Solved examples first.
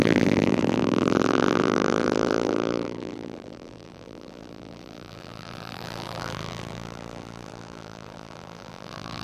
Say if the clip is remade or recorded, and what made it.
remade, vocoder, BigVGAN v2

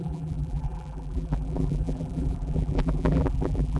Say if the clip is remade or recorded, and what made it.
remade, vocoder, BigVGAN v2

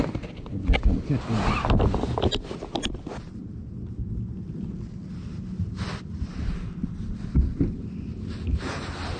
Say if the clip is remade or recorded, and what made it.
recorded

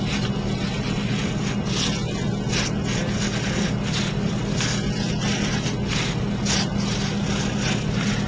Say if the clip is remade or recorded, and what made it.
recorded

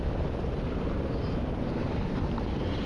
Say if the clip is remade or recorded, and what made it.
recorded